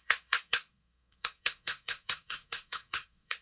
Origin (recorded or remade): remade